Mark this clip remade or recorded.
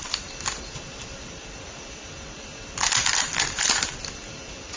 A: recorded